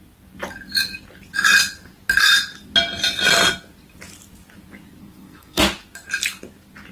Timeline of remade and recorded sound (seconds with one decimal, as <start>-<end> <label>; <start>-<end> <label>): 0.0-5.0 recorded; 5.0-5.6 remade; 5.6-6.9 recorded

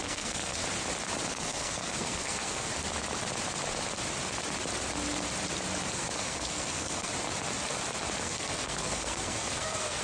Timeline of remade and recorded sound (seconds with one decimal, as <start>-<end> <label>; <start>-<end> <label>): 0.0-0.6 remade; 0.6-1.3 recorded; 1.3-2.7 remade; 2.7-5.9 recorded; 5.9-7.1 remade; 7.1-8.2 recorded; 8.2-10.0 remade